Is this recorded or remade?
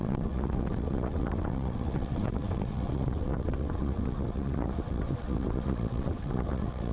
remade